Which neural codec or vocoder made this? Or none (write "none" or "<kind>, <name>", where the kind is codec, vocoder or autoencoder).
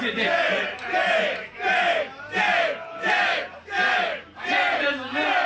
none